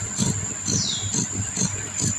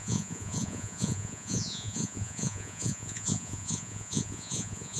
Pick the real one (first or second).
first